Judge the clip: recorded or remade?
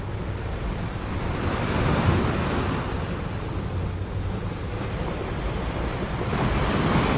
recorded